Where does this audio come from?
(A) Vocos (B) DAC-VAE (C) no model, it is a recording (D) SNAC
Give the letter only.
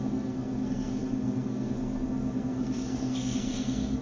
D